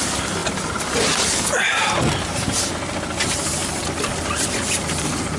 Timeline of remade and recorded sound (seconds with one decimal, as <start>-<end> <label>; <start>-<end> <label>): 0.0-5.4 recorded